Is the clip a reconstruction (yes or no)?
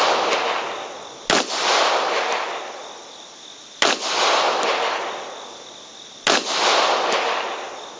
no